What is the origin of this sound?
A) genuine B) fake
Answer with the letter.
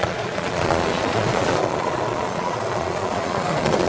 B